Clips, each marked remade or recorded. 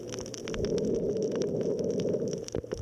recorded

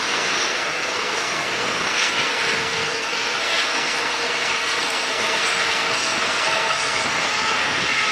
remade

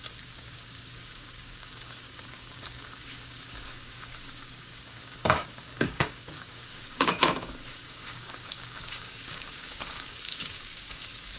remade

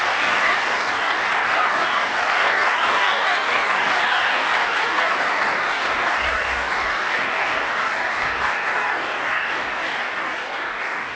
remade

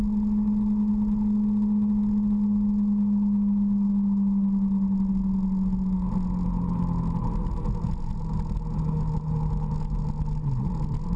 recorded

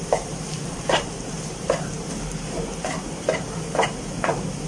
remade